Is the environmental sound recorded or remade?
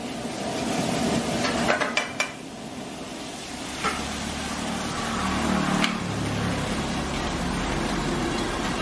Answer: recorded